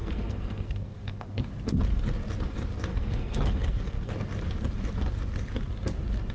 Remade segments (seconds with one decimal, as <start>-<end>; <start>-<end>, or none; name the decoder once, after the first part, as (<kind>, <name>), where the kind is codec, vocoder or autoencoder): 0.0-1.4 (codec, SNAC); 2.9-4.1